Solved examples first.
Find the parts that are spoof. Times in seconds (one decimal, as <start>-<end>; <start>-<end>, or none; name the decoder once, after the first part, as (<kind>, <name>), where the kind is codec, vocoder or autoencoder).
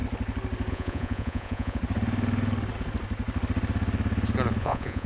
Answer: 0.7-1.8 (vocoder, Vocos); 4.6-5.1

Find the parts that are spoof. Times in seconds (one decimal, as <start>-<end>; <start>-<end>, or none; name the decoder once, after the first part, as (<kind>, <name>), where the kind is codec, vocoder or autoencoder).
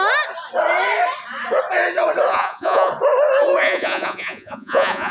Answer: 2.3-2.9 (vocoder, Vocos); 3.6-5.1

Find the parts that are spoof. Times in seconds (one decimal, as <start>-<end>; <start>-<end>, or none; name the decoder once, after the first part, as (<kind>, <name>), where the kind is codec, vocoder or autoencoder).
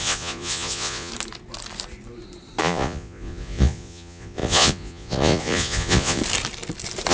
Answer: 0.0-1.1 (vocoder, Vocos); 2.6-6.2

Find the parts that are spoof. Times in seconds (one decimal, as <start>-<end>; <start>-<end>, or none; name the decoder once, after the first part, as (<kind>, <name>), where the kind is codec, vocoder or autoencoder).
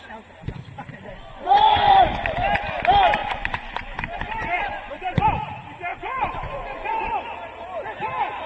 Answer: 1.1-2.0 (vocoder, Vocos); 3.2-5.2; 5.9-7.0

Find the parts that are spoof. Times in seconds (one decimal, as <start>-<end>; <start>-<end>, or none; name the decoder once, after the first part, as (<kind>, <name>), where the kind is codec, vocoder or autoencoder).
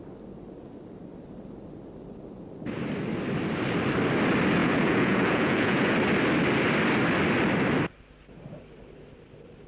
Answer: 4.6-5.9 (vocoder, Vocos)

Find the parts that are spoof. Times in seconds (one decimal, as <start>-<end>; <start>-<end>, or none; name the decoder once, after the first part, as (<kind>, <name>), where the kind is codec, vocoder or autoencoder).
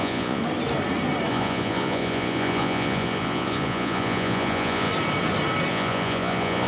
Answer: 0.0-0.4 (vocoder, Vocos); 1.3-4.9; 5.7-6.7